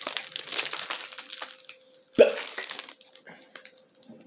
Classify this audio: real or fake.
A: real